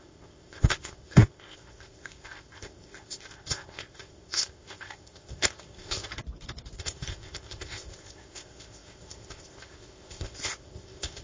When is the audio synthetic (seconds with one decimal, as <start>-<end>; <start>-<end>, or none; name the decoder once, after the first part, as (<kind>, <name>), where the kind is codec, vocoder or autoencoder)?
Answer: 0.0-6.1 (codec, ZipCodec); 6.8-11.2